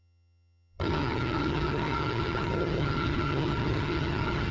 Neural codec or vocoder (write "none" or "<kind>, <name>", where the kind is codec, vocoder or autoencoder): vocoder, HiFi-GAN